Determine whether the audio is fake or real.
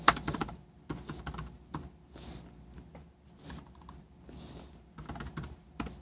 real